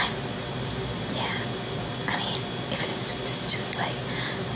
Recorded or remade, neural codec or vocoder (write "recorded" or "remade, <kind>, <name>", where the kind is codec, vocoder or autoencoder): recorded